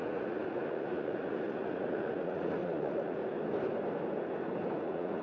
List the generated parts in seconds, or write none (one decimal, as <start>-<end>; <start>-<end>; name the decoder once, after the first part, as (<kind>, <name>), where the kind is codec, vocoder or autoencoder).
0.0-3.2 (vocoder, Vocos); 4.8-5.2